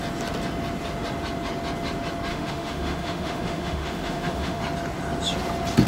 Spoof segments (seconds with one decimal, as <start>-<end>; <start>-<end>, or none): 2.3-4.6